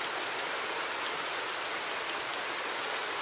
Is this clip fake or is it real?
real